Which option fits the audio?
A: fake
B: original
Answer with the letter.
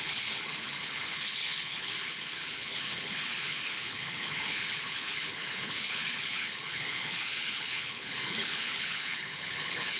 A